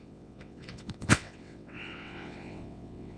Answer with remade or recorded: remade